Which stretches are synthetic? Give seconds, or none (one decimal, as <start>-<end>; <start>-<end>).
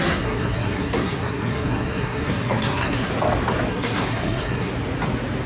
0.0-3.1; 3.7-4.7